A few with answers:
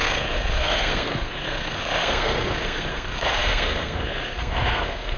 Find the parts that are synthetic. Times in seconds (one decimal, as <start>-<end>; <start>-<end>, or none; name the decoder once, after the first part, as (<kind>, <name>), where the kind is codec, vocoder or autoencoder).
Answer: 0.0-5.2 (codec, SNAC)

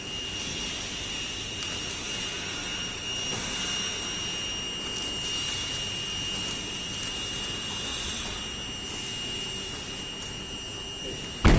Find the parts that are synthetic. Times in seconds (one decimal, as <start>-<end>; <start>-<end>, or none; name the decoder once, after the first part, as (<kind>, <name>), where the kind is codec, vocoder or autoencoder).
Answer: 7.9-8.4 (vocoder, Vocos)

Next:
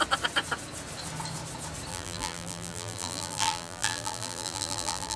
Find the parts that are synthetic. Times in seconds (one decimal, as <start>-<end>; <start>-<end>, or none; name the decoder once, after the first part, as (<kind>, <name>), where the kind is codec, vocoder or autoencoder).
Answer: 1.9-5.2 (vocoder, BigVGAN v2)

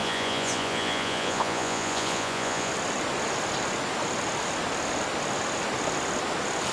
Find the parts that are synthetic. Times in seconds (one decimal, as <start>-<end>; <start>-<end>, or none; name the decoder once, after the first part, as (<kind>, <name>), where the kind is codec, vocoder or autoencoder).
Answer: 0.0-2.7 (vocoder, Vocos)